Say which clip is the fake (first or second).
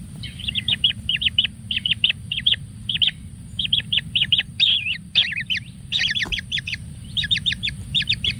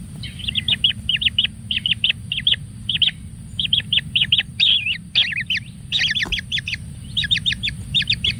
first